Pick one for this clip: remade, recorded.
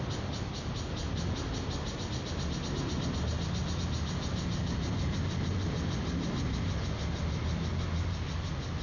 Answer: recorded